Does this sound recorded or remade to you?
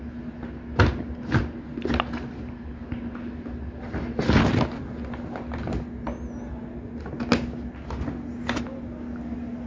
recorded